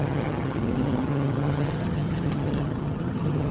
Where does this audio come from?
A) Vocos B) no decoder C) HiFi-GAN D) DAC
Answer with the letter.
C